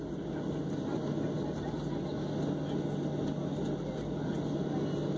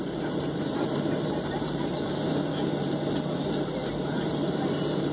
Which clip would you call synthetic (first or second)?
second